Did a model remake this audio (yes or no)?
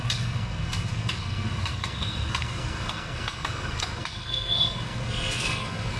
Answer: yes